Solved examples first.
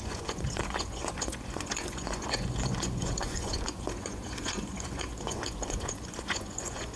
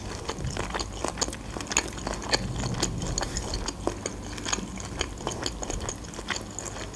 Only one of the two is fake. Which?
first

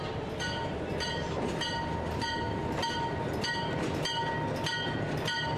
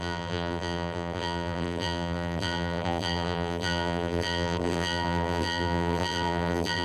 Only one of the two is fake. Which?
second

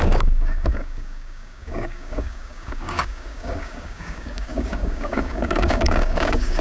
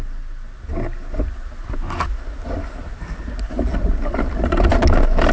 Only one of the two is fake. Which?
first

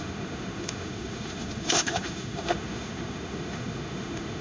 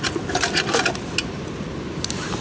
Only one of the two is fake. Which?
first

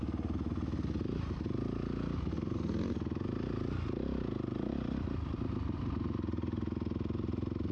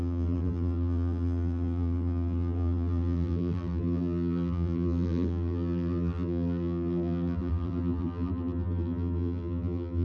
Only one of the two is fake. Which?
second